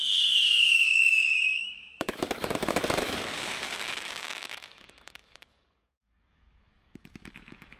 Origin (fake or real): fake